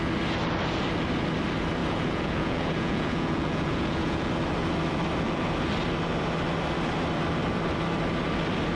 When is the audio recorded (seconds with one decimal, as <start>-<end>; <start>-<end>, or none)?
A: 0.0-1.8; 4.3-8.8

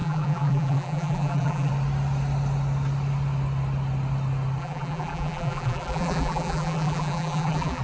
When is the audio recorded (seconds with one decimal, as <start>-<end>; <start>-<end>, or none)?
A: 1.7-4.6